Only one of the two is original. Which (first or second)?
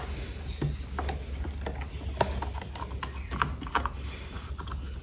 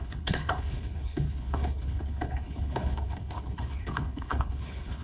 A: first